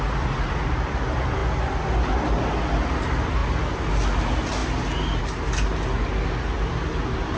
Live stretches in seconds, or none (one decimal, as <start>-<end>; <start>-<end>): 0.0-7.4